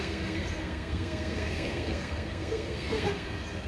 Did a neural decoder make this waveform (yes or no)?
yes